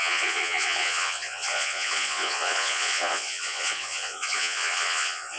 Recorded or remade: remade